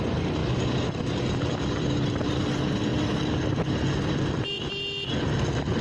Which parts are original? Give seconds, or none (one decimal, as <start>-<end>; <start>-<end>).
0.0-5.8